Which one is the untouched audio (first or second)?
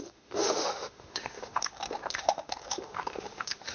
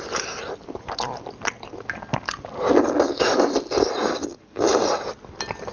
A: second